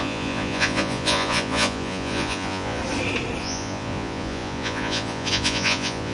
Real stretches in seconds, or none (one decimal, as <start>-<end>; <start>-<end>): 2.8-3.4